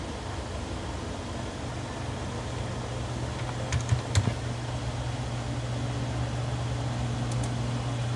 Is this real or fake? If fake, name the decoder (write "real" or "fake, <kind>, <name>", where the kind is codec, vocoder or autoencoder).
real